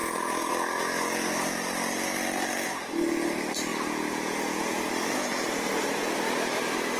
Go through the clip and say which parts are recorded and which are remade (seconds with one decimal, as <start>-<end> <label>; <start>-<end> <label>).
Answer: 0.0-0.5 remade; 0.5-3.7 recorded; 3.7-4.9 remade; 4.9-7.0 recorded